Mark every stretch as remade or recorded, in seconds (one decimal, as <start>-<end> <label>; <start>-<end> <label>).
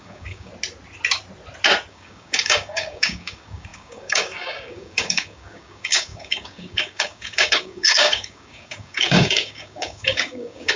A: 0.0-0.5 remade; 0.5-1.9 recorded; 1.9-10.8 remade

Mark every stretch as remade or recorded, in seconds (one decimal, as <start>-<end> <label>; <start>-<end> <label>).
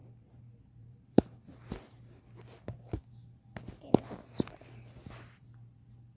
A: 0.0-2.2 remade; 2.2-6.2 recorded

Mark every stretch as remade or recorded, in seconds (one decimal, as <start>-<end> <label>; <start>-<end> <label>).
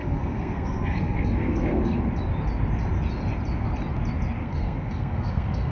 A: 0.0-2.0 remade; 2.0-4.4 recorded; 4.4-5.7 remade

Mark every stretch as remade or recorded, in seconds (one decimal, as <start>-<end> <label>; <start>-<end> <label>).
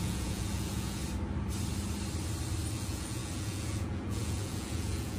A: 0.0-1.0 remade; 1.0-2.7 recorded; 2.7-5.2 remade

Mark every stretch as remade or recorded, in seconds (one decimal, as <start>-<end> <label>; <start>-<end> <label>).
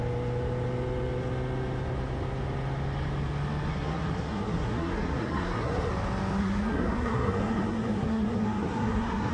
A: 0.0-3.7 recorded; 3.7-5.9 remade; 5.9-6.4 recorded; 6.4-9.3 remade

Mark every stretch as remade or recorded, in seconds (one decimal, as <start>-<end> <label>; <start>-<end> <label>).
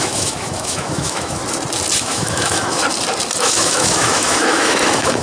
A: 0.0-1.4 remade; 1.4-2.0 recorded; 2.0-2.8 remade; 2.8-3.4 recorded; 3.4-5.2 remade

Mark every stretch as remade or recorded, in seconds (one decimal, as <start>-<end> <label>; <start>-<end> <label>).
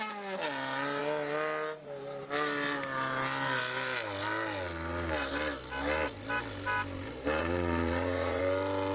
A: 0.0-7.4 recorded; 7.4-8.4 remade; 8.4-8.9 recorded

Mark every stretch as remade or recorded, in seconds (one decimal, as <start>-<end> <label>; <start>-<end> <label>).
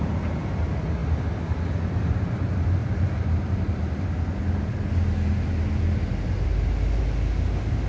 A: 0.0-7.9 recorded